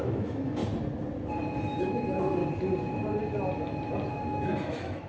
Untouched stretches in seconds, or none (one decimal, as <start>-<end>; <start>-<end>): 0.6-1.8; 2.4-4.1